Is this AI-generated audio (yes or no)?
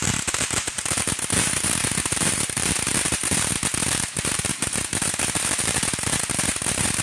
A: yes